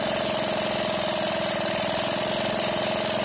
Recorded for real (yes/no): yes